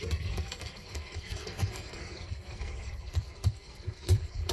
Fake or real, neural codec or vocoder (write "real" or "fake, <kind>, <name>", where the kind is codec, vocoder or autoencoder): fake, codec, SNAC